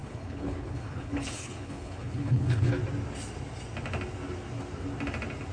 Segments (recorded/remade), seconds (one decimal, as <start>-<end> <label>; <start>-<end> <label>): 0.0-2.7 remade; 2.7-5.5 recorded